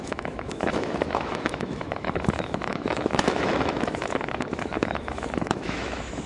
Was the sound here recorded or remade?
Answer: remade